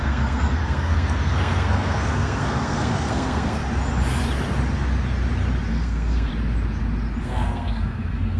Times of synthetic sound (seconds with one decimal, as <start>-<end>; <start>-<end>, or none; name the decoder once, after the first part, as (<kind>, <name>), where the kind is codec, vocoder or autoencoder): 0.0-3.6 (codec, SNAC); 5.7-6.3; 7.2-8.4